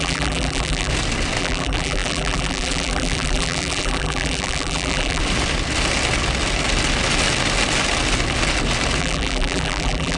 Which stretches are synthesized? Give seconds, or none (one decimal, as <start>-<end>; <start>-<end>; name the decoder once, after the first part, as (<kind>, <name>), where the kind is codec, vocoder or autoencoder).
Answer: 0.0-0.9 (vocoder, BigVGAN v2); 1.4-5.2; 9.0-10.2